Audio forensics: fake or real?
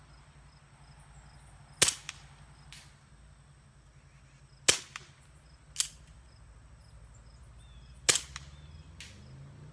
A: real